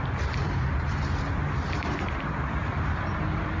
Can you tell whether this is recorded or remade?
remade